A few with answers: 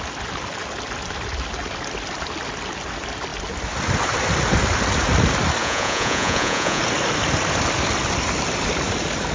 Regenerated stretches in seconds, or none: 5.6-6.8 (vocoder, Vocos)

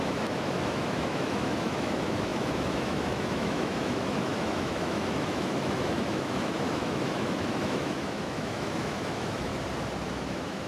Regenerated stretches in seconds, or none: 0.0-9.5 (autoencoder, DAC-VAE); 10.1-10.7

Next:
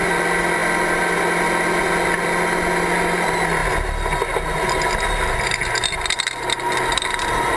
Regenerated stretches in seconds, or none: none

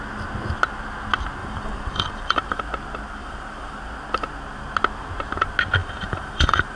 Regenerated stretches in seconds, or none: 1.4-2.6 (vocoder, BigVGAN v2); 3.2-3.8; 5.8-6.8

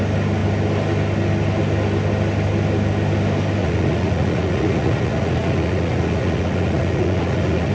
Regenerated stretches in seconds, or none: 3.6-7.7 (vocoder, Vocos)

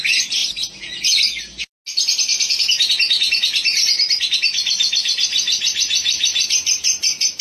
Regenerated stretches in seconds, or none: none

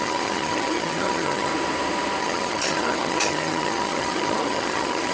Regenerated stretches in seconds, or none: 0.0-1.5 (vocoder, HiFi-GAN); 2.2-5.1

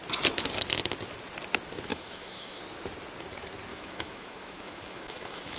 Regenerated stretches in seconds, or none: 1.9-2.6 (autoencoder, DAC-VAE); 3.7-5.6